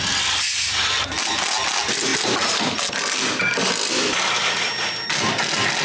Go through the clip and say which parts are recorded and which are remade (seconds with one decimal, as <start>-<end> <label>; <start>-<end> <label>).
0.0-5.8 recorded